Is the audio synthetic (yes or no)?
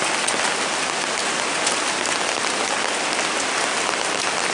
no